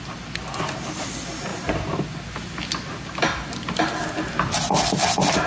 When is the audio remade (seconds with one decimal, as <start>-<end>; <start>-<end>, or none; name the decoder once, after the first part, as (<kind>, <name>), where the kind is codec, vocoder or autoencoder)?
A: 1.5-2.0 (vocoder, BigVGAN v2)